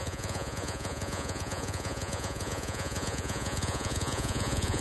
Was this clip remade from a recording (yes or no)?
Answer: yes